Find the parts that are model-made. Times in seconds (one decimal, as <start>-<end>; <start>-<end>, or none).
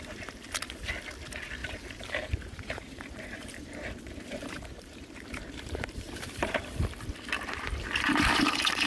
1.6-6.6